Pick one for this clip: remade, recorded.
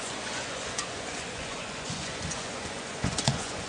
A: remade